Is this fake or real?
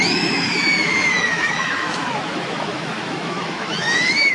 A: fake